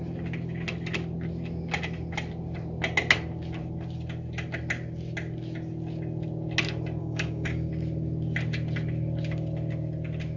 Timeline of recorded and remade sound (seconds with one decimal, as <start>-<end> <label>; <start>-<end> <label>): 0.0-7.0 recorded; 7.0-7.7 remade; 7.7-10.4 recorded

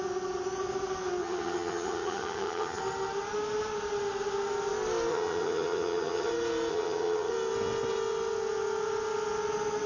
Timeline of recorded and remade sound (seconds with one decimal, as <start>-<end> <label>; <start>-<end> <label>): 0.0-1.2 recorded; 1.2-2.8 remade; 2.8-5.1 recorded; 5.1-6.3 remade; 6.3-6.7 recorded; 6.7-7.3 remade; 7.3-9.9 recorded

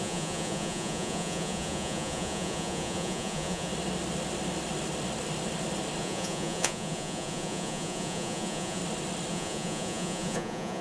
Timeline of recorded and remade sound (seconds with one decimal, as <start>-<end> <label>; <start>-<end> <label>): 0.0-3.7 remade; 3.7-6.0 recorded; 6.0-8.8 remade; 8.8-9.3 recorded; 9.3-10.8 remade

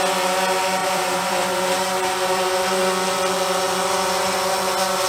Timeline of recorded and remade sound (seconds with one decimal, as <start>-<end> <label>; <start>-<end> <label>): 0.0-0.8 recorded; 0.8-2.8 remade; 2.8-5.1 recorded

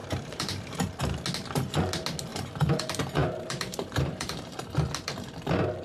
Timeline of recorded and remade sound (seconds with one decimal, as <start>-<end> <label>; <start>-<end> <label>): 0.0-0.9 remade; 0.9-2.3 recorded; 2.3-2.8 remade; 2.8-3.2 recorded; 3.2-4.7 remade; 4.7-5.8 recorded

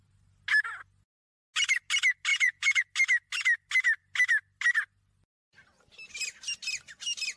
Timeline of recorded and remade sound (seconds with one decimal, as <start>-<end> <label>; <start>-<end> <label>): 0.0-2.3 recorded; 2.3-2.8 remade; 2.8-7.4 recorded

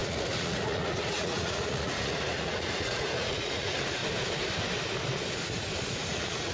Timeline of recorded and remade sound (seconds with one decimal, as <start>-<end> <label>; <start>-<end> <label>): 0.0-4.0 remade; 4.0-5.9 recorded; 5.9-6.5 remade